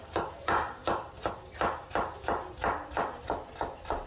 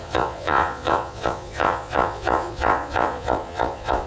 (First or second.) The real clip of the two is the first